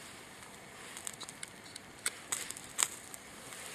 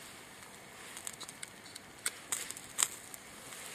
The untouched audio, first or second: second